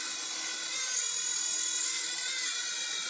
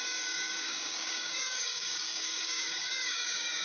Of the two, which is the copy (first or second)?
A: second